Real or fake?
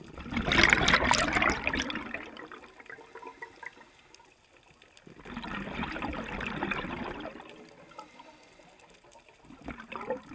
real